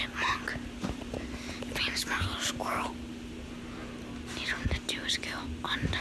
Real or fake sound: real